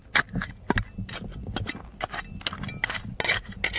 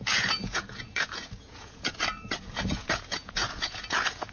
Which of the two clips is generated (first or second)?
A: second